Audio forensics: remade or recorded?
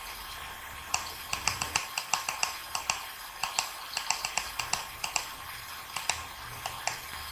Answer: recorded